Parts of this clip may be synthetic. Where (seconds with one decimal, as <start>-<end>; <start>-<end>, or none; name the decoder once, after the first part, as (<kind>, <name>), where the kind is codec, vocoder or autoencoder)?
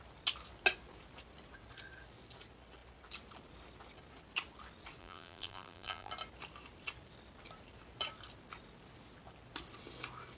5.0-6.1 (vocoder, BigVGAN v2)